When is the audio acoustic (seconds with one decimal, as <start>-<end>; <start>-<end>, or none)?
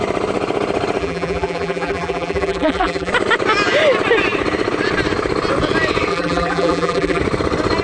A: 0.0-1.0; 3.1-6.1; 7.2-7.8